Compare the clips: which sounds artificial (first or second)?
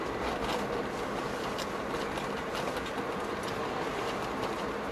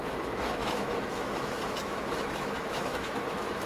second